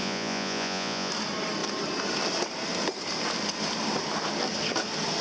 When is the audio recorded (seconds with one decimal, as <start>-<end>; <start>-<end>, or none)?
1.1-5.2